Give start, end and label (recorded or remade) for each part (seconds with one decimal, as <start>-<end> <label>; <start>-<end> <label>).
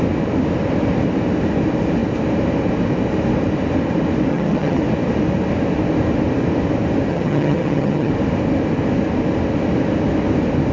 0.0-4.3 recorded; 4.3-4.8 remade; 4.8-7.1 recorded; 7.1-8.1 remade; 8.1-10.7 recorded